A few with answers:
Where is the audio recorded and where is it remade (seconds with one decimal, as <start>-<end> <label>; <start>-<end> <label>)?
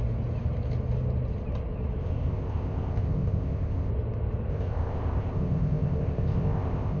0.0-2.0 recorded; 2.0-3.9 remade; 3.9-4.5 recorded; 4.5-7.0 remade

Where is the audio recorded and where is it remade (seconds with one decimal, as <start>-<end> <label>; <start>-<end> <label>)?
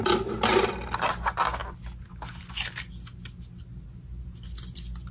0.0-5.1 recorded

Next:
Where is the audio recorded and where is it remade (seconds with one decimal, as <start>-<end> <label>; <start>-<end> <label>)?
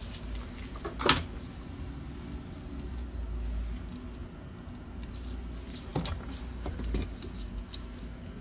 0.0-8.4 recorded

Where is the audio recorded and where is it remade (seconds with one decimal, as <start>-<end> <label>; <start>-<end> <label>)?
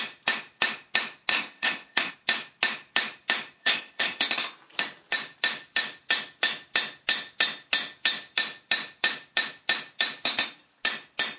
0.0-1.3 recorded; 1.3-2.1 remade; 2.1-3.6 recorded; 3.6-4.2 remade; 4.2-11.4 recorded